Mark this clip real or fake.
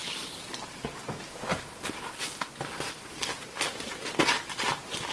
real